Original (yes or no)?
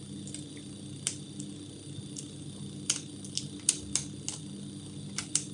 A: yes